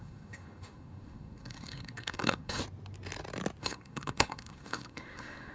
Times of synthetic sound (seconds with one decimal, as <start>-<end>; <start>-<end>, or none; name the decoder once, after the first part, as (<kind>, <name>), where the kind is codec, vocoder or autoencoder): 0.0-2.6 (codec, SNAC); 3.6-5.5